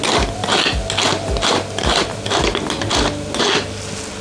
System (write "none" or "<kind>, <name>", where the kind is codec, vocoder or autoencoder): none